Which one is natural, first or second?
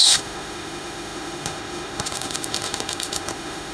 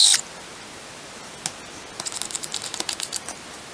second